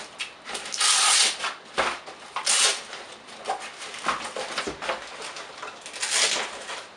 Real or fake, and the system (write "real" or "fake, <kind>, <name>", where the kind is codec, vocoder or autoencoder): real